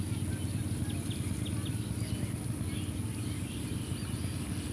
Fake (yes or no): no